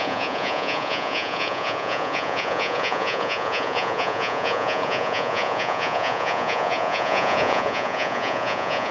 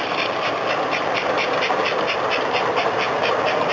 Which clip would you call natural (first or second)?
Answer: second